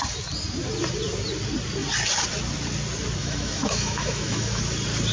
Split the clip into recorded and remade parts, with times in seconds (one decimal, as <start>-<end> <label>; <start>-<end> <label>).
0.0-3.2 recorded; 3.2-4.6 remade; 4.6-5.1 recorded